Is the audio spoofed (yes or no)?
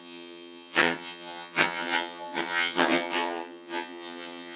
yes